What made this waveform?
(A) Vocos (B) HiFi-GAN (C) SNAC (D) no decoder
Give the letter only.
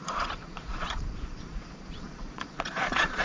A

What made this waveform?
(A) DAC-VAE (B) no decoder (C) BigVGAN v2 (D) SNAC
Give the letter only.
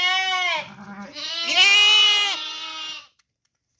B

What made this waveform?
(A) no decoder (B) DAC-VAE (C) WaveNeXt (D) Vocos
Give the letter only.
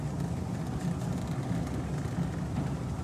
A